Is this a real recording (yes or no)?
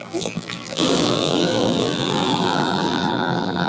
no